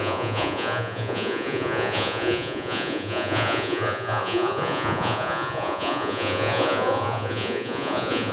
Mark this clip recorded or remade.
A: remade